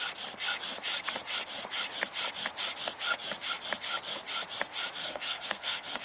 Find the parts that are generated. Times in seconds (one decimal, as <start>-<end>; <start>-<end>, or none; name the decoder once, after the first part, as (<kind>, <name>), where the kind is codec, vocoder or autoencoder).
5.0-6.0 (codec, SNAC)